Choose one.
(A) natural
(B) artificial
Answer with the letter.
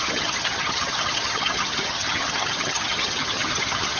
B